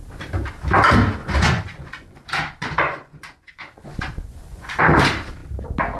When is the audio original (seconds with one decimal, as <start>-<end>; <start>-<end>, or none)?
0.0-1.2; 4.8-6.0